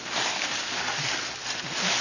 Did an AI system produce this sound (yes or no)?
no